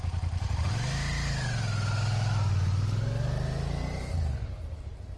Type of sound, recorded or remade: recorded